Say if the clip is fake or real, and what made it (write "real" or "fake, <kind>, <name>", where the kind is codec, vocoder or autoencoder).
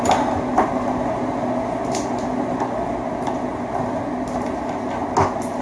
real